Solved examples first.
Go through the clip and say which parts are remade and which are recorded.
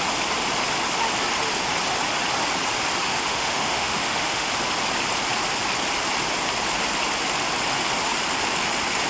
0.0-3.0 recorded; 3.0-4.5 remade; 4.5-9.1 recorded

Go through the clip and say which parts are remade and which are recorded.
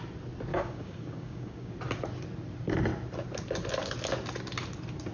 0.0-0.5 recorded; 0.5-1.7 remade; 1.7-5.1 recorded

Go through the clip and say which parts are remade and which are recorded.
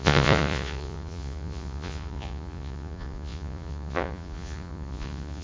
0.0-5.4 remade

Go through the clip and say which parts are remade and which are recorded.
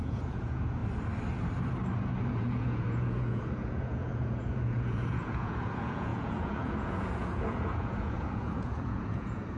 0.0-0.8 remade; 0.8-2.3 recorded; 2.3-9.6 remade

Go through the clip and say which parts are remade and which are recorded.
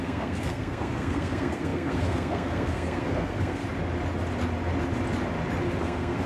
0.0-3.6 remade; 3.6-5.8 recorded; 5.8-6.3 remade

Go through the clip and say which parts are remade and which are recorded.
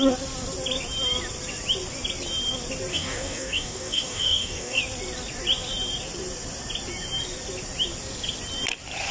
0.0-2.9 recorded; 2.9-4.8 remade; 4.8-9.1 recorded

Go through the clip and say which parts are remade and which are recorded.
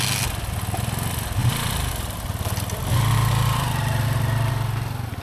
0.0-1.4 recorded; 1.4-4.5 remade; 4.5-5.2 recorded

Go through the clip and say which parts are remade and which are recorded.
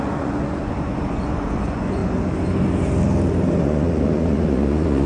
0.0-2.0 remade; 2.0-3.6 recorded; 3.6-5.1 remade